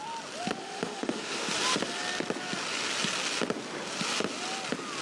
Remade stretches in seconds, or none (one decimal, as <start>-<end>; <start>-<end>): 0.6-1.5